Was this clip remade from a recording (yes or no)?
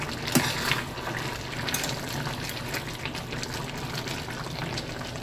no